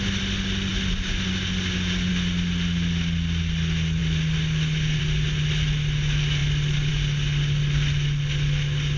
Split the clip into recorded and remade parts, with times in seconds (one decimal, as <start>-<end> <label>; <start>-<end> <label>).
0.0-9.0 recorded